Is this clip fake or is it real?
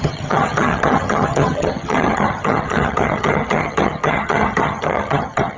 fake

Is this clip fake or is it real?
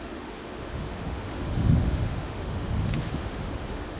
fake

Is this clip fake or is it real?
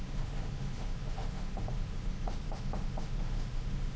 fake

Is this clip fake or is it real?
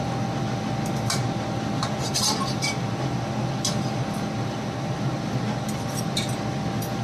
real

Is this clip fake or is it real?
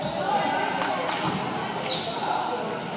real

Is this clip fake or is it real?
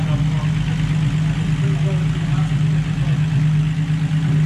real